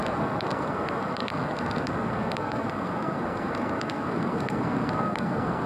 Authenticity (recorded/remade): remade